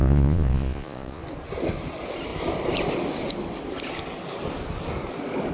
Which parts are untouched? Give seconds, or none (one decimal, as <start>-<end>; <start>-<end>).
1.2-5.5